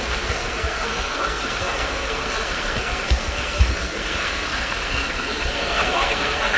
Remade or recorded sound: remade